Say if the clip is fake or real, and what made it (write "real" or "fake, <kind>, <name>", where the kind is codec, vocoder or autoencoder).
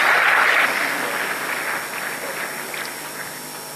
real